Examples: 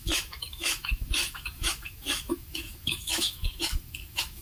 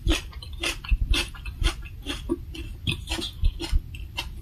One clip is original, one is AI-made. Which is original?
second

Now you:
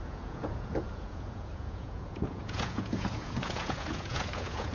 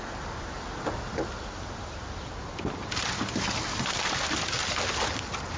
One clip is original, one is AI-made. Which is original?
second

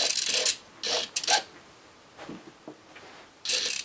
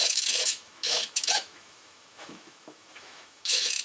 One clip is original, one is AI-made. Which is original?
first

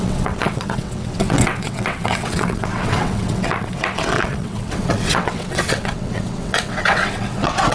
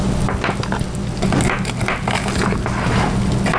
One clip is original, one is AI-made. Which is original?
second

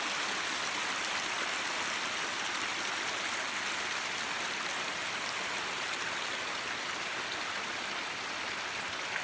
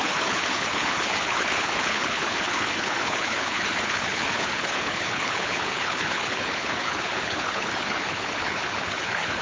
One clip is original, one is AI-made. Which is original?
first